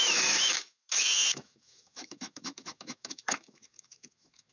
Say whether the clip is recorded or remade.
remade